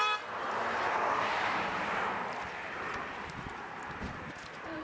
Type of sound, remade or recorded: remade